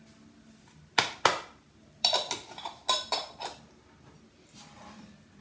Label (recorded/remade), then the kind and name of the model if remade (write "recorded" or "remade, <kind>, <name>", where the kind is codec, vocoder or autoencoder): recorded